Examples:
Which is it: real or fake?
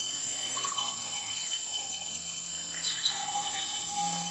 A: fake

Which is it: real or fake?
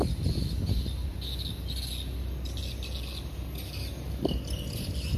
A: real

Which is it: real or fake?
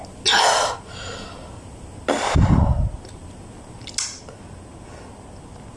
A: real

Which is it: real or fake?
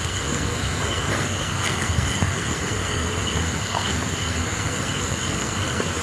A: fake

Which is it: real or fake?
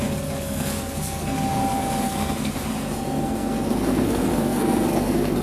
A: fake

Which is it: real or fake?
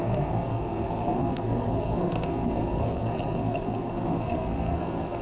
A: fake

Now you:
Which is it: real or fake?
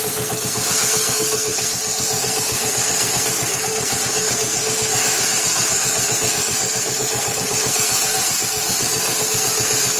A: fake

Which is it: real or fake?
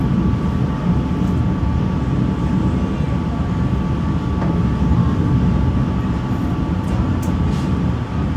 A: real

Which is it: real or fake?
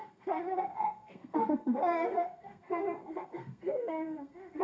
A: fake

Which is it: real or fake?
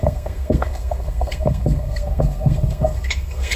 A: fake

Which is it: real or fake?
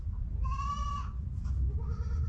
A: real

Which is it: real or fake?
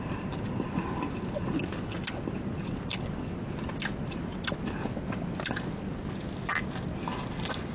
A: real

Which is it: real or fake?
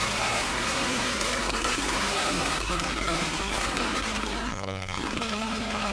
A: fake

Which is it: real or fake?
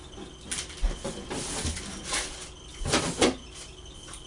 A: real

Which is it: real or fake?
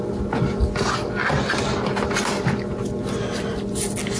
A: real